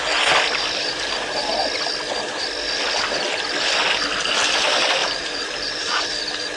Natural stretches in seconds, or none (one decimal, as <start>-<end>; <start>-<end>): 0.0-5.0; 6.0-6.6